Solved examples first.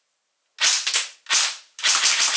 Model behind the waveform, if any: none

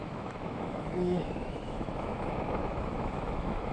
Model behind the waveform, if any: autoencoder, DAC-VAE